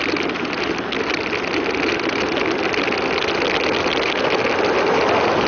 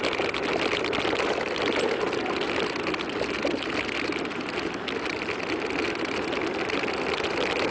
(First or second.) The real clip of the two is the first